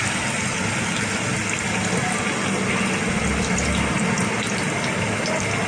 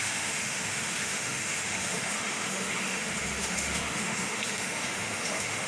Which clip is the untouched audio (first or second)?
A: first